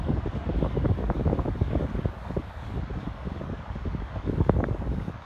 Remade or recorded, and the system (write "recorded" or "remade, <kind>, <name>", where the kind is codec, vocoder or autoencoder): remade, codec, DAC